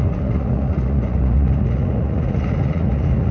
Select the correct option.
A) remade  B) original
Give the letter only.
A